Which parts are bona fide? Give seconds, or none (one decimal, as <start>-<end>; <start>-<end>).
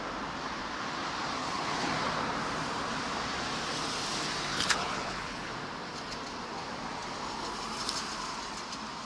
0.0-1.4; 1.9-4.5; 5.5-9.1